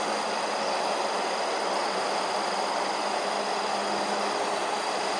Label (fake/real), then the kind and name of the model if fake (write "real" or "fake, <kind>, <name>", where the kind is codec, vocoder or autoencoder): real